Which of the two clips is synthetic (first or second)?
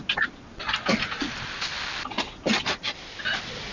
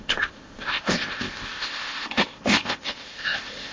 second